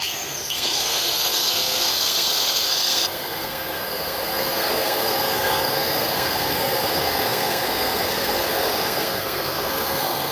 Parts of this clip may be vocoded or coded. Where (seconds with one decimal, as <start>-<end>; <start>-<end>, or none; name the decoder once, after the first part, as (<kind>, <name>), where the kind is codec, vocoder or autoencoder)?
0.0-10.3 (codec, SNAC)